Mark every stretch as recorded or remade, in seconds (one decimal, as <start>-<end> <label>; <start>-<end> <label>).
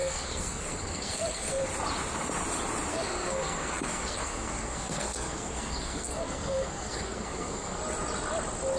0.0-1.6 remade; 1.6-2.9 recorded; 2.9-7.8 remade; 7.8-8.8 recorded